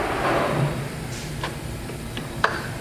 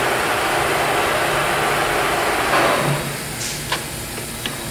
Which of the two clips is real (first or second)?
second